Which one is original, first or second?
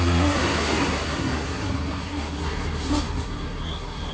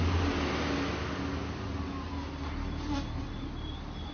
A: second